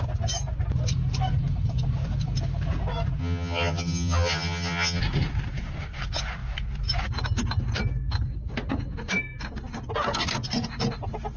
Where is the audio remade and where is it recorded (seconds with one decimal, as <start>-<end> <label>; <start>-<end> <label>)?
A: 0.0-3.2 recorded; 3.2-5.0 remade; 5.0-11.4 recorded